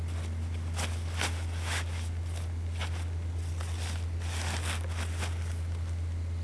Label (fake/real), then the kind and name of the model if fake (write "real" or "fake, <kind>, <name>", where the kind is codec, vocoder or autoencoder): real